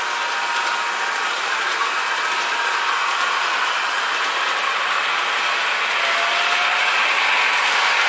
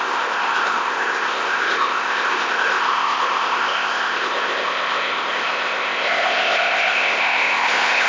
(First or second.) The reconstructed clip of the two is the second